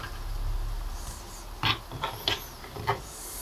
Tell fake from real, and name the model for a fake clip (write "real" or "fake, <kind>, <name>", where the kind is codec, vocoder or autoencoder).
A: fake, vocoder, BigVGAN v2